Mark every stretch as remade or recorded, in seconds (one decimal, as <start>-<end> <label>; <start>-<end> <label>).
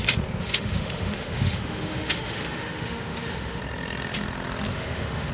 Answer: 0.0-0.4 recorded; 0.4-3.6 remade; 3.6-4.7 recorded; 4.7-5.3 remade